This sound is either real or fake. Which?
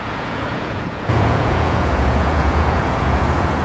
fake